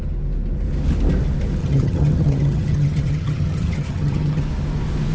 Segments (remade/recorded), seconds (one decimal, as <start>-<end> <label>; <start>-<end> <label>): 0.0-1.6 recorded; 1.6-4.4 remade; 4.4-5.1 recorded